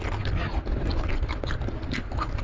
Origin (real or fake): real